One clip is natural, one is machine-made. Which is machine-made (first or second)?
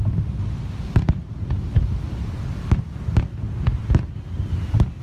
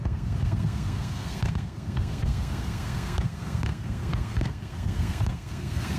second